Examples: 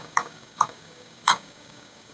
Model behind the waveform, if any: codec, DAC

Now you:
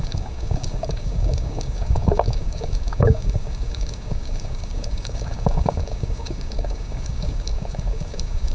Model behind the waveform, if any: codec, DAC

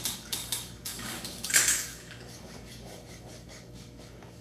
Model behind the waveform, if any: codec, DAC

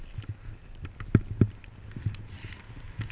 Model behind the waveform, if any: none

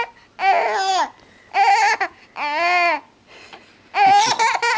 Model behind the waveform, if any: none